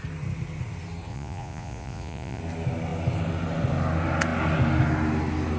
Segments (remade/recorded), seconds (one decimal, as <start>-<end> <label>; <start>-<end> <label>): 0.0-1.1 recorded; 1.1-2.4 remade; 2.4-5.6 recorded